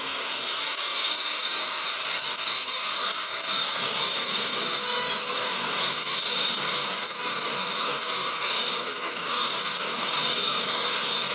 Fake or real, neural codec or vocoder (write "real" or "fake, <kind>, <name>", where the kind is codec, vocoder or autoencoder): fake, codec, DAC